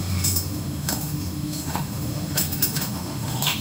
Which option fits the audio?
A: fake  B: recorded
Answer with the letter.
A